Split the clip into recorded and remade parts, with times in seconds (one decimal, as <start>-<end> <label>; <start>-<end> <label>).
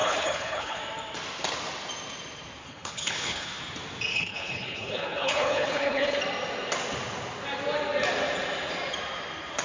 0.0-0.8 remade; 0.8-2.6 recorded; 2.6-3.6 remade; 3.6-4.1 recorded; 4.1-6.2 remade; 6.2-9.6 recorded